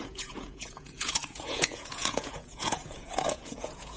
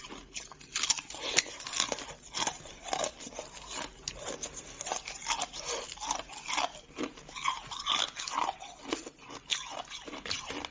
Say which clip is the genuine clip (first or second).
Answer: second